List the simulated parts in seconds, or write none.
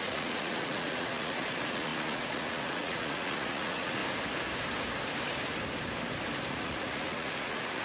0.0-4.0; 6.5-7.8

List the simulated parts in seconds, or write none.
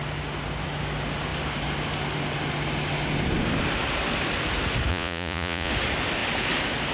4.9-5.7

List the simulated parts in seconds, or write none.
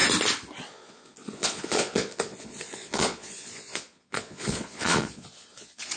0.7-6.0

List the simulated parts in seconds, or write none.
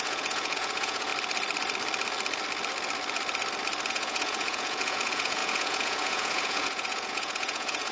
0.0-1.1; 3.9-7.9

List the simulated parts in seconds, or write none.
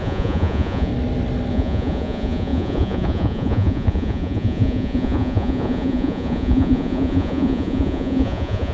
0.0-0.9; 1.5-8.7